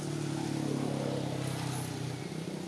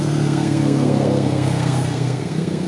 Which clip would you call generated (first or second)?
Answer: second